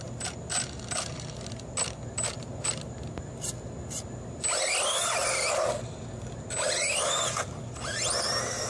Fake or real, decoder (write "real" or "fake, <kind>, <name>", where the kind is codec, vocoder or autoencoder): real